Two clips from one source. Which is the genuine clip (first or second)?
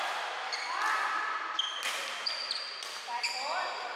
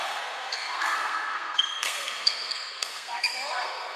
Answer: first